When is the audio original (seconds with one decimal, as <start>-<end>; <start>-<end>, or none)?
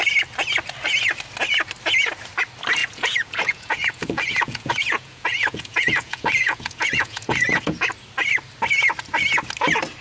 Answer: 0.0-2.8; 7.6-10.0